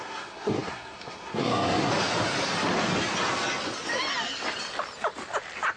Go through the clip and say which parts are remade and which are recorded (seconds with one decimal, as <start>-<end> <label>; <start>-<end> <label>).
0.0-1.9 remade; 1.9-5.8 recorded